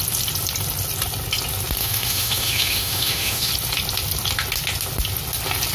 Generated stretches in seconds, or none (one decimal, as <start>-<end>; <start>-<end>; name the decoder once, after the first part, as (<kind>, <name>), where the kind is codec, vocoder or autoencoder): 1.8-3.5 (autoencoder, DAC-VAE)